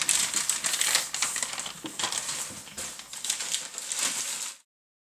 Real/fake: real